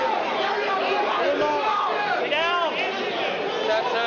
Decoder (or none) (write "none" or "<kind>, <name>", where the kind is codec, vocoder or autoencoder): none